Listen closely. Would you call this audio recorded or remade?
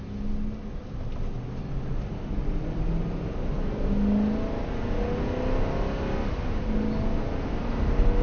recorded